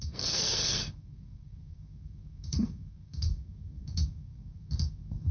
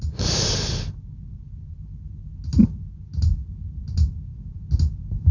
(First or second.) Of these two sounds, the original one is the second